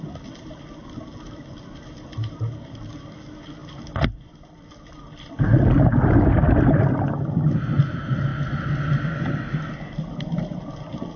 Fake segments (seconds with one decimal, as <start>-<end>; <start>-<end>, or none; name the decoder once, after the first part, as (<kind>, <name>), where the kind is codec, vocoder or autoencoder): none